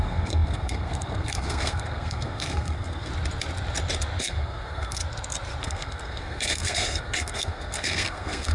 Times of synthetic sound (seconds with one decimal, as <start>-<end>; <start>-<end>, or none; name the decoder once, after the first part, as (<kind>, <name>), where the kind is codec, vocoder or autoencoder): 0.0-3.1 (codec, SNAC); 4.2-5.0; 5.6-8.5